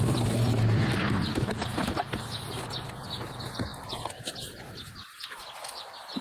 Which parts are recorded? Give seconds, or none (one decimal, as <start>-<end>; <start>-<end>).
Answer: 0.0-6.2